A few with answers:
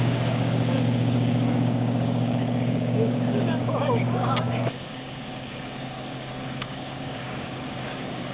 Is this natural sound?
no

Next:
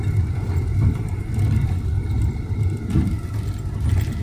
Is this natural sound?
yes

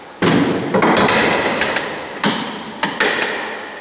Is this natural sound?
yes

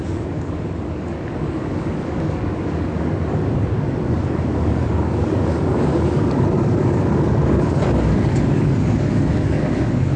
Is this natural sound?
no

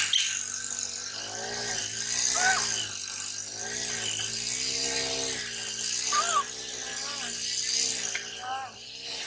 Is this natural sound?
yes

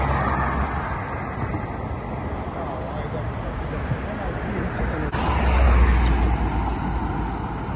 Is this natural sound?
yes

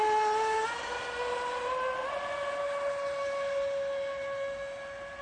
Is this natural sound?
yes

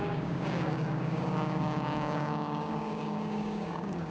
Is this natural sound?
no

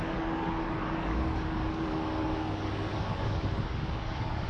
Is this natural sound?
no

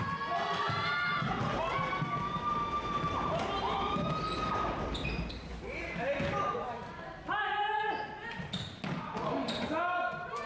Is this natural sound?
yes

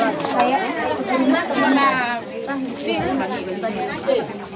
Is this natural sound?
yes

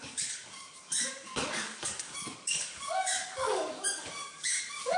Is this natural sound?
no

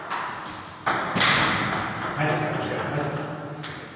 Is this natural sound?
yes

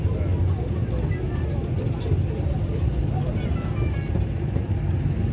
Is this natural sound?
yes